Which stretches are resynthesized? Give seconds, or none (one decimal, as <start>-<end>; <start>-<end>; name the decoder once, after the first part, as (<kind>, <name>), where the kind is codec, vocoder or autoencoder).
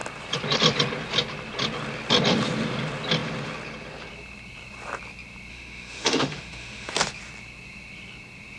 5.5-6.9 (autoencoder, DAC-VAE)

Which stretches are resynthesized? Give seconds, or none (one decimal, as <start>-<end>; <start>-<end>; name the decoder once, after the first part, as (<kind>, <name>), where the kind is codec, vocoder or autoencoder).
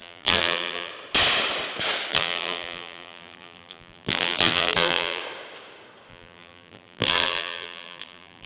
0.0-0.9 (vocoder, BigVGAN v2); 2.1-5.2; 6.1-8.5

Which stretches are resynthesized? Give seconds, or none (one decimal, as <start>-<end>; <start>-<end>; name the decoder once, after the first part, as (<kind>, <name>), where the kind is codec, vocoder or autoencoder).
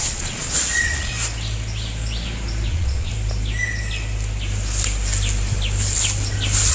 0.0-1.1 (vocoder, Vocos); 2.7-3.1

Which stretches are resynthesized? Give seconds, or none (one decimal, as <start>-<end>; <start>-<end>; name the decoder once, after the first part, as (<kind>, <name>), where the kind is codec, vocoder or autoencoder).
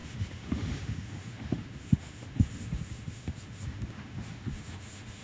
0.0-5.2 (autoencoder, DAC-VAE)